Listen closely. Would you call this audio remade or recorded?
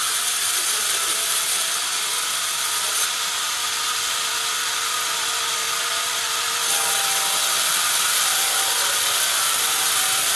remade